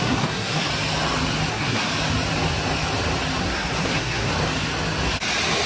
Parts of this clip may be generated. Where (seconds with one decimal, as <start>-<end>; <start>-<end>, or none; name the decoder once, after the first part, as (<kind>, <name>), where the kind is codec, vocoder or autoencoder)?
0.0-0.7 (codec, SNAC); 1.5-1.9; 3.4-4.3